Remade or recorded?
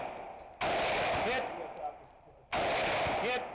recorded